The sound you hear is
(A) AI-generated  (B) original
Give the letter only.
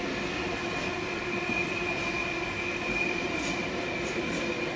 B